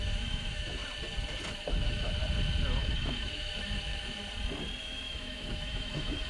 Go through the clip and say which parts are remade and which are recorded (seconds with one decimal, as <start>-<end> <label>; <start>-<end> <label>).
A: 0.0-0.8 remade; 0.8-1.5 recorded; 1.5-2.2 remade; 2.2-2.8 recorded; 2.8-4.2 remade; 4.2-4.8 recorded; 4.8-6.3 remade